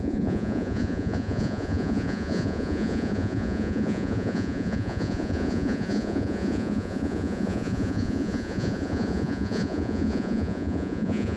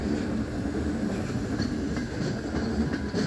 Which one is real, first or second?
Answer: second